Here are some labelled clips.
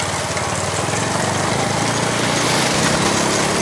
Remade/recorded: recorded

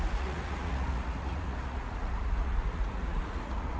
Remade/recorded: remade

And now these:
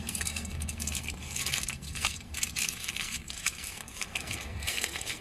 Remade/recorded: remade